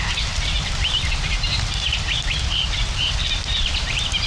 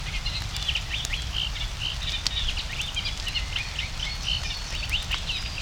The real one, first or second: second